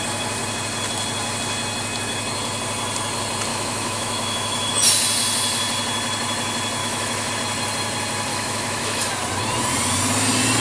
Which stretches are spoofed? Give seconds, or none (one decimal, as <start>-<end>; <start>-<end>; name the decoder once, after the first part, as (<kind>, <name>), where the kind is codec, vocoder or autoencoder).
3.5-4.7 (autoencoder, DAC-VAE); 6.8-7.3; 8.3-9.1